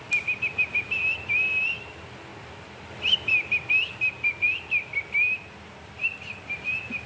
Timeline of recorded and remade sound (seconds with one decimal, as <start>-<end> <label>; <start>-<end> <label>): 0.0-7.1 recorded

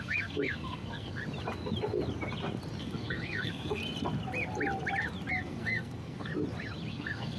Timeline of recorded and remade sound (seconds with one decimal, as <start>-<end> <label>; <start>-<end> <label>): 0.0-1.2 remade; 1.2-2.8 recorded; 2.8-3.8 remade; 3.8-5.3 recorded; 5.3-6.3 remade; 6.3-6.9 recorded; 6.9-7.4 remade